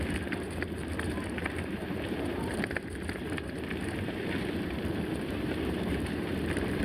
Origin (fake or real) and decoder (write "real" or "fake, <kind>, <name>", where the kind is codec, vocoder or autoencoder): fake, vocoder, BigVGAN v2